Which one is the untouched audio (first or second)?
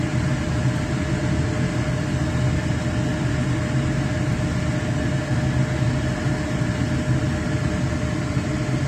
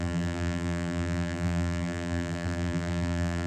first